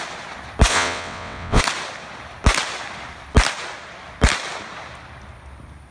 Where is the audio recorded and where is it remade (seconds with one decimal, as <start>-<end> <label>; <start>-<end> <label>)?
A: 0.0-0.7 recorded; 0.7-1.6 remade; 1.6-5.9 recorded